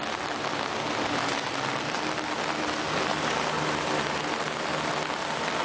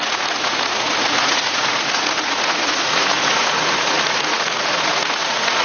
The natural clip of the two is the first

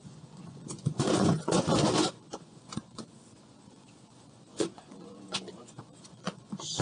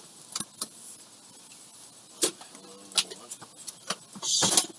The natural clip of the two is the second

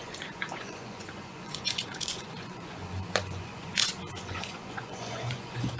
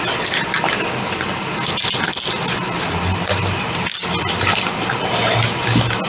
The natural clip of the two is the second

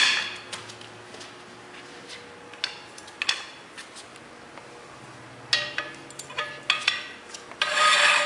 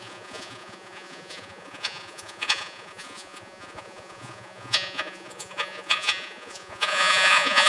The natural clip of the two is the first